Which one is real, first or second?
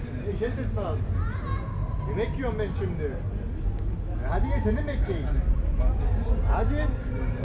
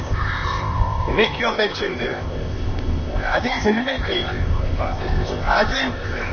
first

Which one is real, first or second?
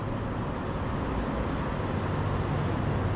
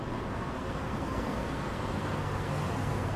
first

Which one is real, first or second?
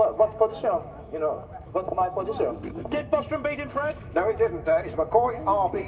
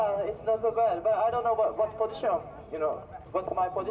second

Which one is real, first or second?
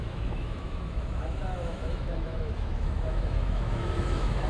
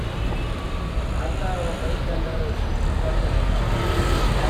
second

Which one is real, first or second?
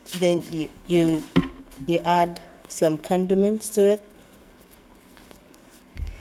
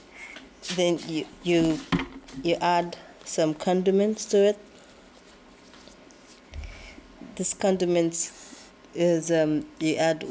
second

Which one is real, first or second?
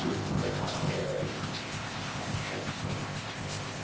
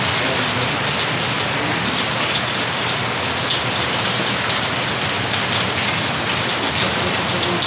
second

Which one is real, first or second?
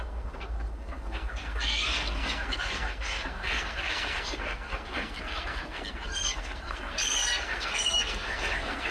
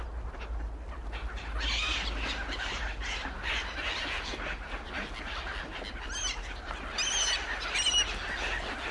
second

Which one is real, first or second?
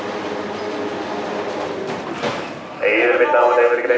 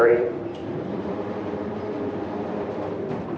first